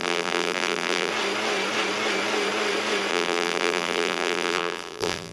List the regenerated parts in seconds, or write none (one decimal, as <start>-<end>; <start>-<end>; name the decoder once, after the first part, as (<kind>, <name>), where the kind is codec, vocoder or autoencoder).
0.0-1.1 (vocoder, BigVGAN v2); 3.1-5.3